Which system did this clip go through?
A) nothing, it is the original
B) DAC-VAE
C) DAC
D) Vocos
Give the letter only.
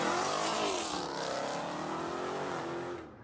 A